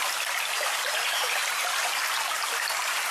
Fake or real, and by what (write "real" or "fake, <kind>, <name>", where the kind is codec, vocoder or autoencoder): real